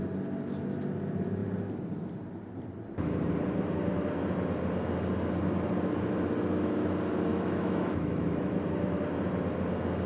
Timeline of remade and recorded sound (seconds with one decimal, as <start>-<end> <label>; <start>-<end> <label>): 0.0-7.3 recorded; 7.3-8.6 remade; 8.6-10.1 recorded